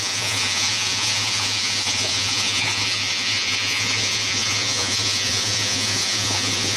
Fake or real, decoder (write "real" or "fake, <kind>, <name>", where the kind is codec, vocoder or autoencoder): fake, vocoder, Vocos